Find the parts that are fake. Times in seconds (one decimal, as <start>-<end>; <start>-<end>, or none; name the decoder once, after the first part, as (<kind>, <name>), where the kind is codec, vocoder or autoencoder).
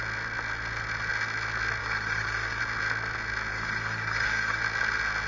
1.8-2.6 (codec, DAC); 3.5-4.6